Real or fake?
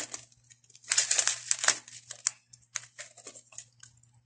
real